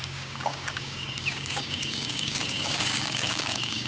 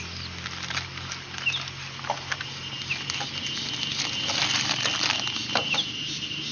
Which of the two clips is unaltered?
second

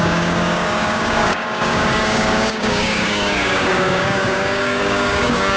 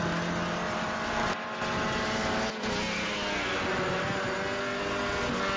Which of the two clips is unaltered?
second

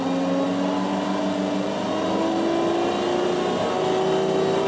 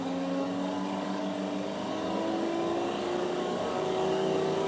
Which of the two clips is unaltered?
first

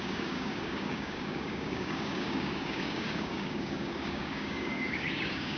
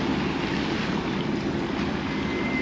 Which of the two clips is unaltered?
second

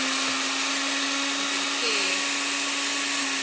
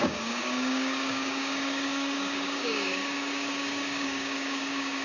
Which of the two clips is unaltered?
first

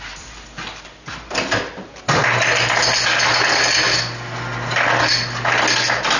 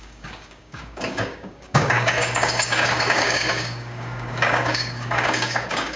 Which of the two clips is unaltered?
first